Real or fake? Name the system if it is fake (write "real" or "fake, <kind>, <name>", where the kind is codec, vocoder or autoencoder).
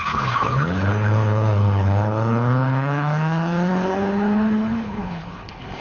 fake, codec, HILCodec